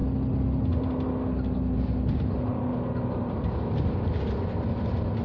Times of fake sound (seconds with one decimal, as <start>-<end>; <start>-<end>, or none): none